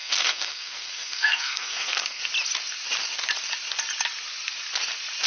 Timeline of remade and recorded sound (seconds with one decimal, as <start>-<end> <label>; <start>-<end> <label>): 0.0-2.2 remade; 2.2-5.3 recorded